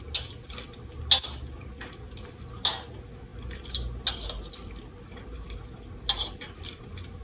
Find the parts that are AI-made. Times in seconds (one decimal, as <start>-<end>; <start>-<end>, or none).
none